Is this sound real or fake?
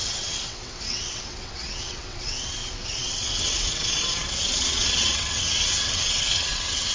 fake